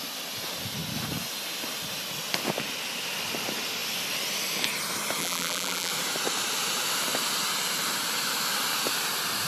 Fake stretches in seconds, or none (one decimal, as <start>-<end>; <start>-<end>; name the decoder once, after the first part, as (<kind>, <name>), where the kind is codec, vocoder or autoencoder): 5.2-5.9 (vocoder, BigVGAN v2)